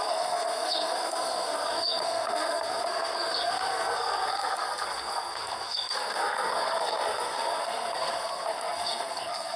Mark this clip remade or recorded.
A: remade